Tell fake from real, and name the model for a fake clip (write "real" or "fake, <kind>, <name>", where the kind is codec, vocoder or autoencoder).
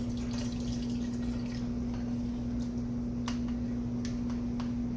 real